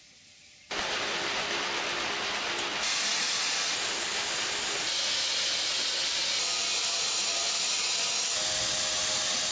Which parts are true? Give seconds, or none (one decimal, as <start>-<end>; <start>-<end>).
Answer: 0.0-9.5